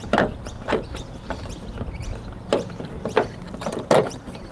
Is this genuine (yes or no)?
yes